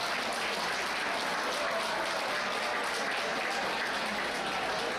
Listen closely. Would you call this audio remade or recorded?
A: recorded